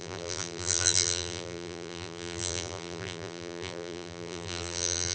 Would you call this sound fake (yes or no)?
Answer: yes